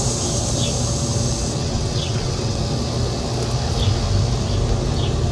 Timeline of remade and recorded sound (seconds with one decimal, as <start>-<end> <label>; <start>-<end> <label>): 0.0-1.6 recorded; 1.6-2.6 remade; 2.6-5.3 recorded